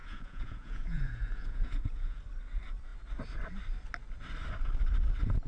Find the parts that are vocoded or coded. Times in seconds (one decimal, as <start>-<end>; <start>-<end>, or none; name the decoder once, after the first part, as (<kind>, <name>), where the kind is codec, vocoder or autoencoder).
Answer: 0.0-2.2 (vocoder, Vocos)